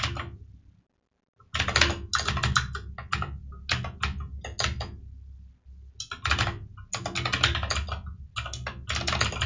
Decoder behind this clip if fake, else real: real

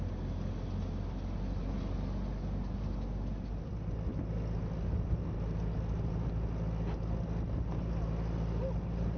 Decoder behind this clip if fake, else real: real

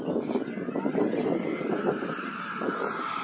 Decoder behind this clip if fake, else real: real